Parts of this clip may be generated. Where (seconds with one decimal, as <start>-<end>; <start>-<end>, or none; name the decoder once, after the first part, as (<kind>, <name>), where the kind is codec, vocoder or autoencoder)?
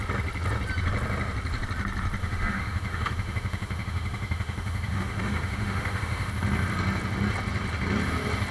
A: 2.2-6.3 (autoencoder, DAC-VAE)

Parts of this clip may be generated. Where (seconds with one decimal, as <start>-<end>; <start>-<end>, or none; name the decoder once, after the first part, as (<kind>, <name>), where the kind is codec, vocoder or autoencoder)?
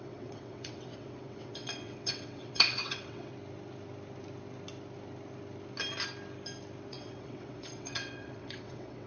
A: 0.0-3.3 (vocoder, WaveNeXt); 6.9-9.1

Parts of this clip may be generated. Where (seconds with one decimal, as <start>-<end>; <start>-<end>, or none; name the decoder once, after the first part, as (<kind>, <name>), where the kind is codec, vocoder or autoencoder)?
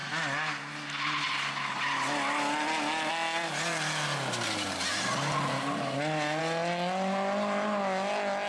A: none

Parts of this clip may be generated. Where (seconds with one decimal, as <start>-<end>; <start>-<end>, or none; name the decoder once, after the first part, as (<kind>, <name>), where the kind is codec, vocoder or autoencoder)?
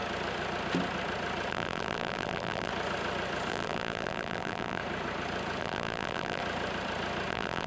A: 1.5-2.7 (vocoder, BigVGAN v2); 3.5-4.8; 5.6-6.4; 7.3-7.7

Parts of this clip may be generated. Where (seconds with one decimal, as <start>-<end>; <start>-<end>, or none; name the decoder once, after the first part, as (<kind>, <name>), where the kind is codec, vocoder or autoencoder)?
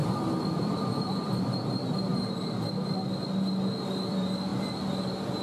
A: 0.6-2.1 (vocoder, BigVGAN v2); 4.1-4.5; 5.0-5.4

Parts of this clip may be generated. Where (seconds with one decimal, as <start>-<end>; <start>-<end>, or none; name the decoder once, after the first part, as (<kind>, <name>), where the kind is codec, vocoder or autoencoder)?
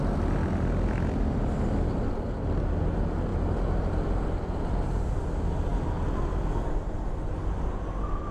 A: none